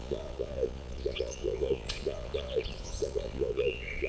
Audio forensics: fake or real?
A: fake